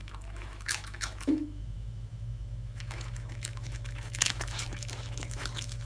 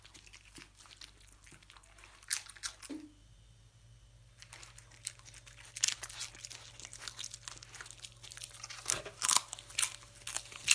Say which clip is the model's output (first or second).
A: first